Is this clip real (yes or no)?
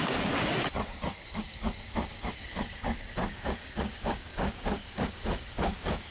no